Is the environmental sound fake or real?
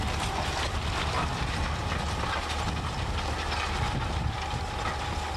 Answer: real